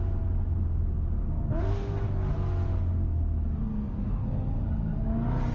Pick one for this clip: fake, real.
real